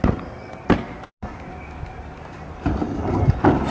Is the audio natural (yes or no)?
yes